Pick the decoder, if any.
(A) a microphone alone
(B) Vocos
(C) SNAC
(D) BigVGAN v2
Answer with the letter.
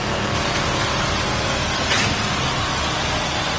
A